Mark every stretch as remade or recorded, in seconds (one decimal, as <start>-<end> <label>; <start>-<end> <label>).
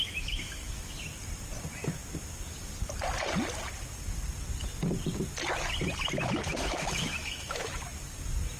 0.0-1.0 remade; 1.0-6.5 recorded; 6.5-7.8 remade; 7.8-8.6 recorded